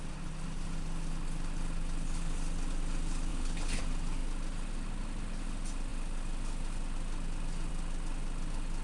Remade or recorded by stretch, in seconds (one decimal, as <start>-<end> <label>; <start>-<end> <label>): 0.0-3.3 recorded; 3.3-3.8 remade; 3.8-8.8 recorded